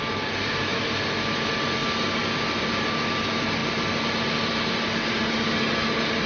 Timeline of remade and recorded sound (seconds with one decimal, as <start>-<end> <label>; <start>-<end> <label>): 0.0-6.3 recorded